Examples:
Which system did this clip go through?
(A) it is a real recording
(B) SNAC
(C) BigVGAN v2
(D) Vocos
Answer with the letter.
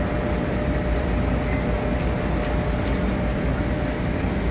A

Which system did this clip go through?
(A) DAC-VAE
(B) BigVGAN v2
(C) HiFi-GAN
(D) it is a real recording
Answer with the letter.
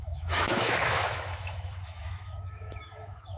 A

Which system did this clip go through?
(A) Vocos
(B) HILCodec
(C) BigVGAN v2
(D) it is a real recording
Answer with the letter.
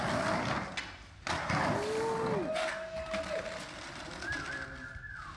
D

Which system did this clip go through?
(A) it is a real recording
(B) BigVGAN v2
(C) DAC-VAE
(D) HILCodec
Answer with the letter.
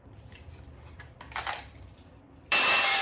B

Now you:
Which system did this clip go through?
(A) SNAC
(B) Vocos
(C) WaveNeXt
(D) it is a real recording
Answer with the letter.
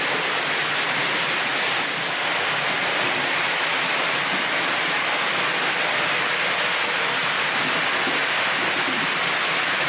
D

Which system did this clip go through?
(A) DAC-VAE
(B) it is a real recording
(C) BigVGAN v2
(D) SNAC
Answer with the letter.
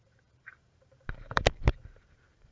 C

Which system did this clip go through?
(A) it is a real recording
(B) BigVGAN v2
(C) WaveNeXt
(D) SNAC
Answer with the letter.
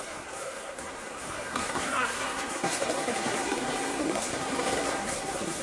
D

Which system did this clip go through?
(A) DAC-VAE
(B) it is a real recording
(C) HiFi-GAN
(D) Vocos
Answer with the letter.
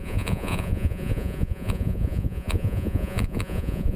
D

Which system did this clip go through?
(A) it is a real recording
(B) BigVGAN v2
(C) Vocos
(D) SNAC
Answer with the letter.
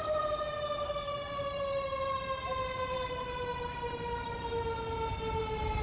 B